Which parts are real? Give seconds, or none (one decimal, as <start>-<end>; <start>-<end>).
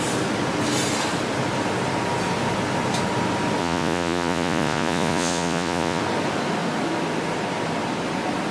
0.0-3.6; 6.0-8.5